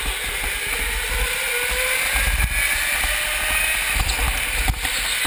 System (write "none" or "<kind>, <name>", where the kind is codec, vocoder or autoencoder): none